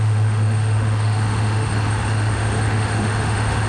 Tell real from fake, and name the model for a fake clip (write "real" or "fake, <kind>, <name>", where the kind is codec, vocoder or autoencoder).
fake, autoencoder, DAC-VAE